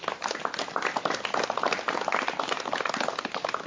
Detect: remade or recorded recorded